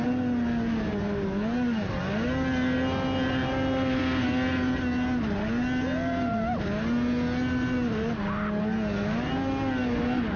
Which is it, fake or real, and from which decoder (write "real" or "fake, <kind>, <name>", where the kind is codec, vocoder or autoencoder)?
real